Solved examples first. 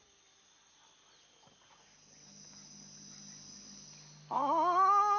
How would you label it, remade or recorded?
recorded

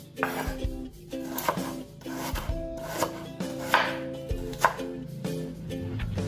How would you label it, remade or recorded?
recorded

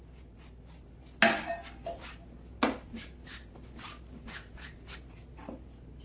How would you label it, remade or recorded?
recorded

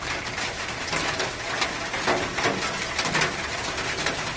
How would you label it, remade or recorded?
recorded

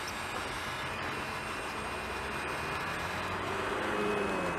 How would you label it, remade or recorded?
recorded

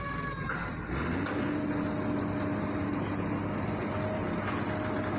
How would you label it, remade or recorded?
recorded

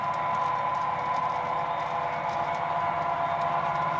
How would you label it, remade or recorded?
recorded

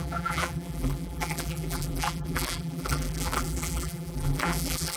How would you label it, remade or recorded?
remade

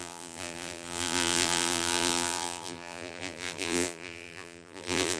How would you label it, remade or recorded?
remade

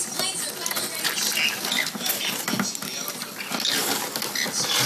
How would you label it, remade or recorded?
recorded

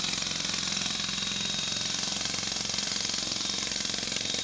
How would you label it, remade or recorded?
remade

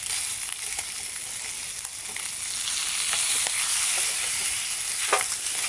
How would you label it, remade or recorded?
recorded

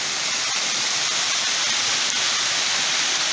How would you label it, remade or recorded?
remade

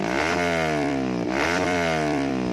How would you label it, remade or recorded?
remade